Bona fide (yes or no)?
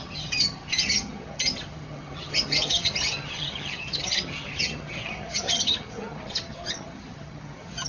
no